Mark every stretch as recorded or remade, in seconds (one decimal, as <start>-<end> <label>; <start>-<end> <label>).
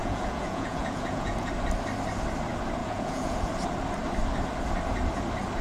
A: 0.0-1.5 remade; 1.5-2.8 recorded; 2.8-3.5 remade; 3.5-5.6 recorded